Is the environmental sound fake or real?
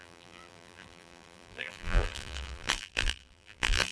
fake